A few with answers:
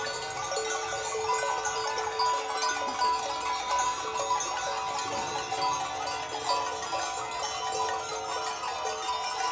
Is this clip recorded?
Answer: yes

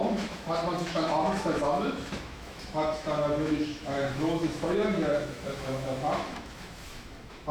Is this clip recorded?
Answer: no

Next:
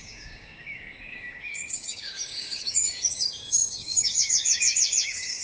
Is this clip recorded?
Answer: no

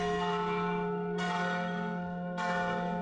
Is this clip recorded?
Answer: no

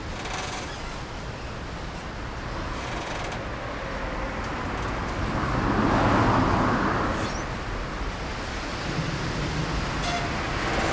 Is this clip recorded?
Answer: yes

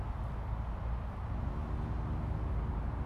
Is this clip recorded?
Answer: yes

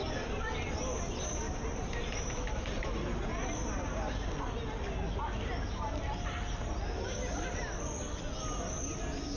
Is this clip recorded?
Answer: yes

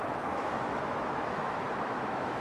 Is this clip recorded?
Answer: no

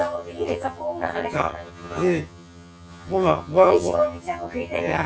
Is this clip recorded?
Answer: no